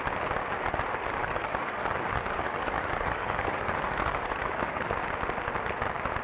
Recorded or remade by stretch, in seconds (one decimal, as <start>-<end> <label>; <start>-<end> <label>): 0.0-1.2 recorded; 1.2-4.9 remade; 4.9-6.2 recorded